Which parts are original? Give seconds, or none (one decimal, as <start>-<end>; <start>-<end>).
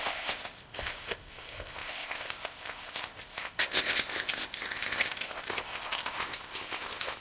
none